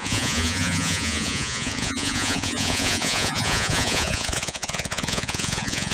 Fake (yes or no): yes